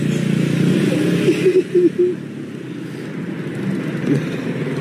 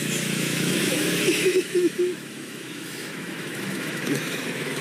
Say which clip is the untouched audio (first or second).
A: first